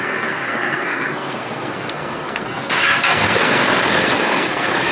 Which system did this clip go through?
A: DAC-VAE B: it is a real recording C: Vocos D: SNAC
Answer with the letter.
D